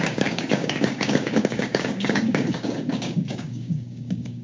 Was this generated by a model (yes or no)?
yes